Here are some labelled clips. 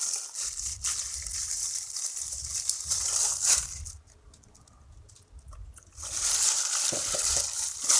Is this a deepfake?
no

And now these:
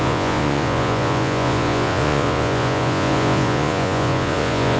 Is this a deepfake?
yes